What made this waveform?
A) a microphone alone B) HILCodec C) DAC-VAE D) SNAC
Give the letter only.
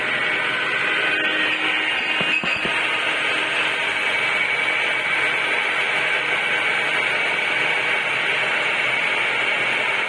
A